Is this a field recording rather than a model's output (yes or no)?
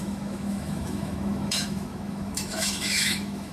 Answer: no